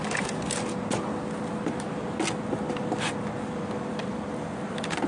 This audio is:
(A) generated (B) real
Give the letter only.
B